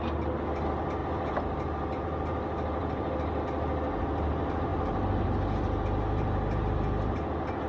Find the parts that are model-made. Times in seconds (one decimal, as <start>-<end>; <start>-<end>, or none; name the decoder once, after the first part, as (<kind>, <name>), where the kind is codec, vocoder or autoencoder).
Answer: 1.0-3.4 (vocoder, BigVGAN v2)